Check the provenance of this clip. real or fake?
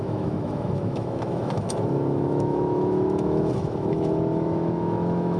fake